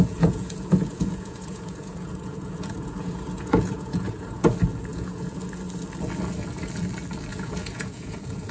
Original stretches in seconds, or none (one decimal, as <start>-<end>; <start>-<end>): 4.5-4.9; 5.4-7.3